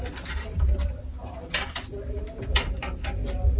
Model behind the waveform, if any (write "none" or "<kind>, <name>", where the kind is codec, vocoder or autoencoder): none